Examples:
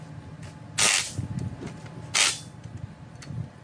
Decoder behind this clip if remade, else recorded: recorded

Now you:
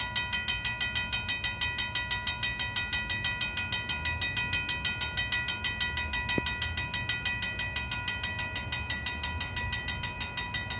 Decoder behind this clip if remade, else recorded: recorded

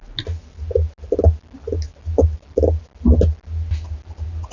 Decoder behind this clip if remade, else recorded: recorded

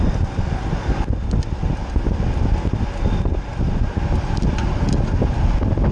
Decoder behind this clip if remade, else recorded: recorded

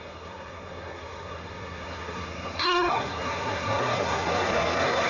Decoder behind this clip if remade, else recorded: remade, codec, SNAC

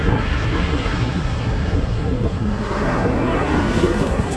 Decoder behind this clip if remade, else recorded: remade, codec, SNAC